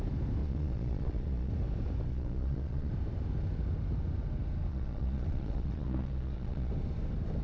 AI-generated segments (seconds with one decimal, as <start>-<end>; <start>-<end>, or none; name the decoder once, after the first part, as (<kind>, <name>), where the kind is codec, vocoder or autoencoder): 0.4-1.5 (vocoder, Vocos); 2.1-2.9; 4.7-6.7